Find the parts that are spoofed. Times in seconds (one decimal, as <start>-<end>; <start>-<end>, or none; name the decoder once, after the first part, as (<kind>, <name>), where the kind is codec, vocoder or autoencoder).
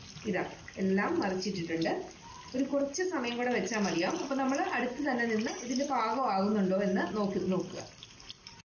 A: none